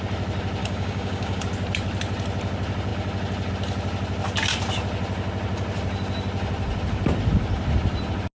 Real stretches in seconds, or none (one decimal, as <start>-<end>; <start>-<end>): 0.0-0.6; 1.4-8.4